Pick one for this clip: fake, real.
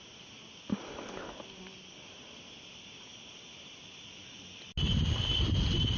real